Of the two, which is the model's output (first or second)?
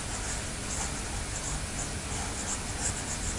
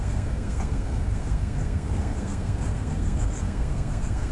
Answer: second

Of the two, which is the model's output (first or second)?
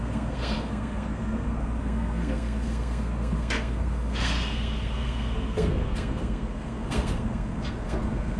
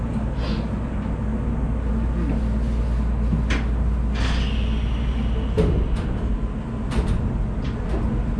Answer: first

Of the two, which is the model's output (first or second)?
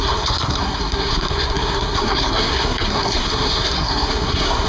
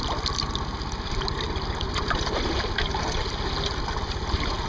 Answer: first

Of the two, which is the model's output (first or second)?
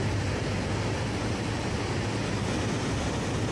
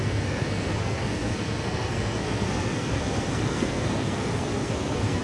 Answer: second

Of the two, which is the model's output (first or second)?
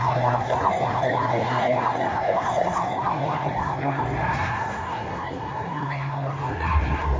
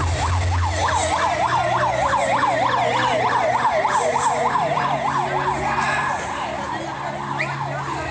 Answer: first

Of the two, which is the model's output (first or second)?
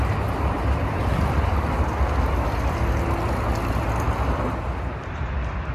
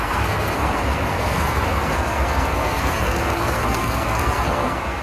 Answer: second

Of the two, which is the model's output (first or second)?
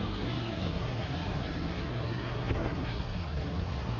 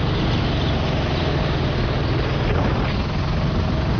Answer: first